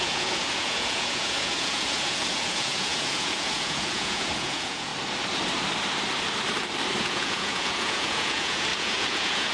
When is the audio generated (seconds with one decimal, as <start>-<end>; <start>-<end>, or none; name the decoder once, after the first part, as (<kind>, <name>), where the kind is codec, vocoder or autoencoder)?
0.0-4.9 (vocoder, Vocos); 7.0-9.5